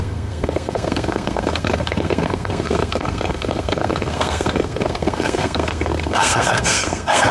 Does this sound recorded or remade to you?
remade